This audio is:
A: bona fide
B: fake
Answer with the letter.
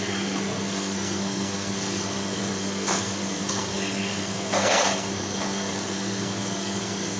B